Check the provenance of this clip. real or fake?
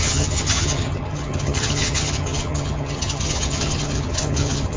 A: fake